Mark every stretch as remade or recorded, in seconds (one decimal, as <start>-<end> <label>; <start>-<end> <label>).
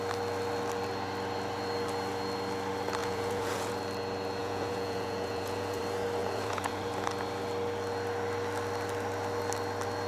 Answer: 0.0-3.0 recorded; 3.0-3.7 remade; 3.7-4.4 recorded; 4.4-5.8 remade; 5.8-6.2 recorded; 6.2-6.8 remade; 6.8-10.1 recorded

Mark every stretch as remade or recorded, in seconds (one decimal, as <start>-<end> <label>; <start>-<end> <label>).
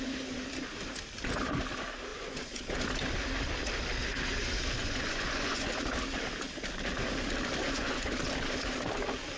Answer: 0.0-2.1 recorded; 2.1-2.6 remade; 2.6-4.8 recorded; 4.8-5.8 remade; 5.8-7.6 recorded; 7.6-8.1 remade; 8.1-9.4 recorded